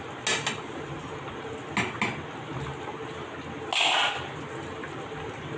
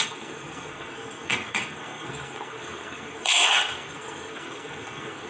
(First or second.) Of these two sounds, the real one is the first